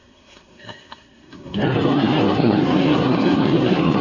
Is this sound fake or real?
fake